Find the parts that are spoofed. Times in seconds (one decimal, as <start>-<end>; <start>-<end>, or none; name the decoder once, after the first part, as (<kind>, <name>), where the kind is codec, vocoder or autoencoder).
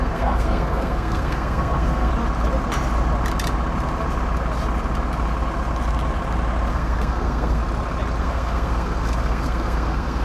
0.0-2.1 (codec, SNAC); 6.7-7.6; 8.2-10.2